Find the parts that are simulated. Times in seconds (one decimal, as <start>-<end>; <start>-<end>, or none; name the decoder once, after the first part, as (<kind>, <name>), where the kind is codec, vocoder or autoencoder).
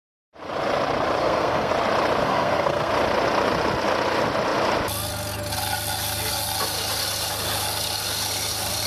1.2-1.7 (codec, SNAC); 2.2-2.9